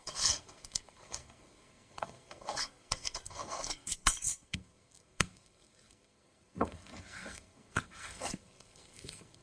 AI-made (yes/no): yes